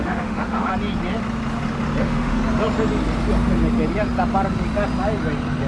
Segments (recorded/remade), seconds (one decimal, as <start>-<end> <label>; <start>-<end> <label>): 0.0-0.7 remade; 0.7-2.0 recorded; 2.0-2.4 remade; 2.4-5.7 recorded